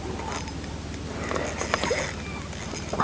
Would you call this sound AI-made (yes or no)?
no